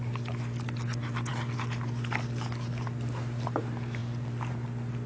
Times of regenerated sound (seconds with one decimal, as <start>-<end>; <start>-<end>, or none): none